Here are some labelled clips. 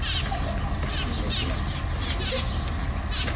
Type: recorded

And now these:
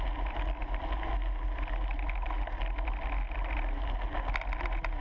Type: recorded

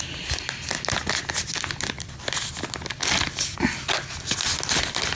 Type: recorded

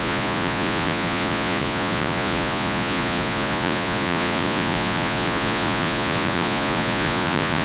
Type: remade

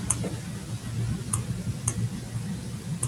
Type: recorded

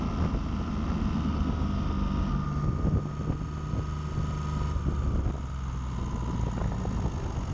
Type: recorded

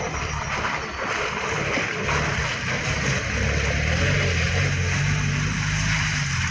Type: recorded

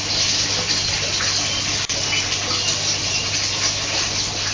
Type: recorded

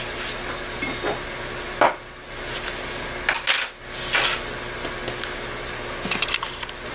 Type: recorded